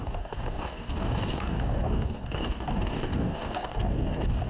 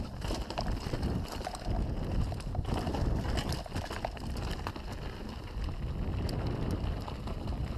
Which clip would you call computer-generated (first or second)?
first